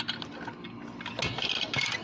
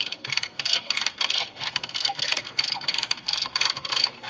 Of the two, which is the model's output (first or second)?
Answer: second